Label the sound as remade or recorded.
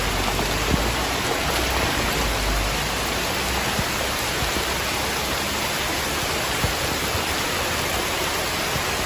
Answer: recorded